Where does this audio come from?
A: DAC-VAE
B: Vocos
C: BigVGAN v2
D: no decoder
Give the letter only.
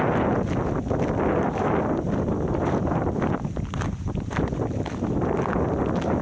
D